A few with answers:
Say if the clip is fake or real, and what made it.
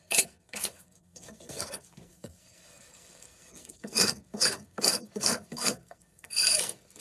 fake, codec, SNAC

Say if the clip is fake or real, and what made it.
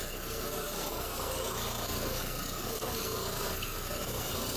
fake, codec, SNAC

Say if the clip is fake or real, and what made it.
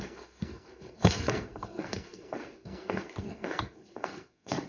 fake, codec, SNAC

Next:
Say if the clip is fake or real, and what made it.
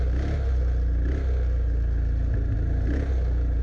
real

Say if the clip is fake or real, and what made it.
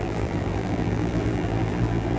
fake, vocoder, BigVGAN v2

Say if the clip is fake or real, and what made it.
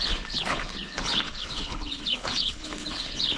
fake, codec, HILCodec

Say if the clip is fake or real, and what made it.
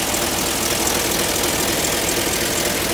real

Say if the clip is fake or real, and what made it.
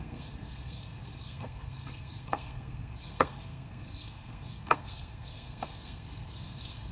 fake, codec, SNAC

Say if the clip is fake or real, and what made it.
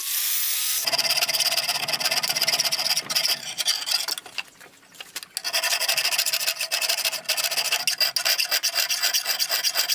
real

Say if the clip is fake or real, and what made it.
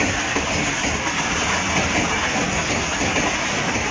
real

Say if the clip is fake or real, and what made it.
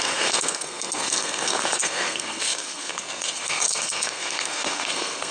fake, codec, SNAC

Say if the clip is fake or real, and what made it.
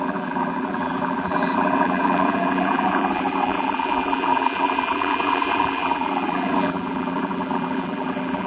fake, vocoder, BigVGAN v2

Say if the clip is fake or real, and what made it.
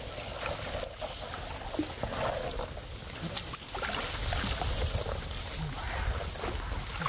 real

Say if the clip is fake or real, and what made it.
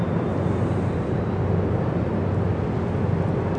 real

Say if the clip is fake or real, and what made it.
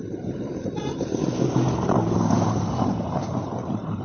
fake, vocoder, BigVGAN v2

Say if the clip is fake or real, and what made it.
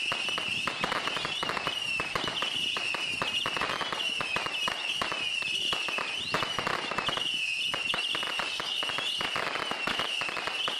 real